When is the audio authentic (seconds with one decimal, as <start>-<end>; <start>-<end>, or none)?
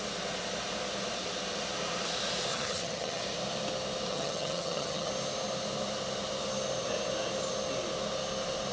0.0-2.5; 3.2-4.1; 5.1-8.7